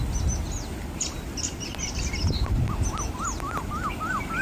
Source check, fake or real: real